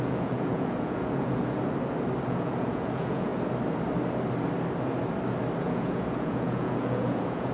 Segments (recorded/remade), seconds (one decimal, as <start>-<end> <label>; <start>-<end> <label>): 0.0-1.4 remade; 1.4-2.3 recorded; 2.3-3.3 remade; 3.3-5.6 recorded; 5.6-7.5 remade